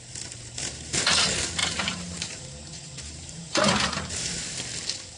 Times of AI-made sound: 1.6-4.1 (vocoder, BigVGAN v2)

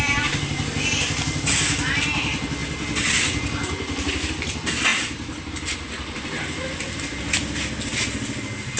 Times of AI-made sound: 4.9-5.5 (vocoder, BigVGAN v2)

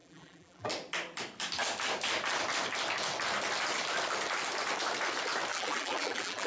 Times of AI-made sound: 0.0-0.7 (vocoder, BigVGAN v2); 5.5-6.5

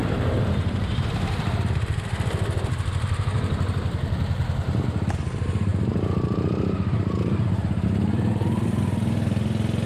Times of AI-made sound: 0.0-3.7 (vocoder, BigVGAN v2); 5.7-8.8

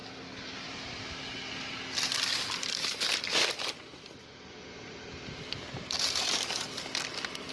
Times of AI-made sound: 0.0-1.6 (vocoder, BigVGAN v2); 2.3-3.6

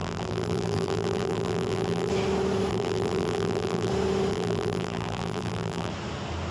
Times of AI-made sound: 0.0-2.1 (vocoder, BigVGAN v2); 2.7-3.9; 4.3-5.9

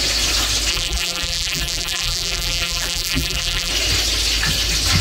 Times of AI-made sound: 0.7-3.7 (vocoder, BigVGAN v2)

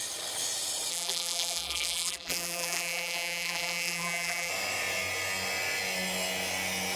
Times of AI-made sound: 0.9-4.5 (vocoder, BigVGAN v2)